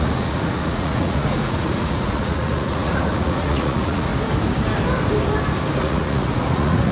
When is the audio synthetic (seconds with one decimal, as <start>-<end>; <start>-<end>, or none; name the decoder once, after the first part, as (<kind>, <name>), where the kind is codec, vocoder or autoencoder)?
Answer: 0.0-4.1 (vocoder, Vocos); 5.8-6.9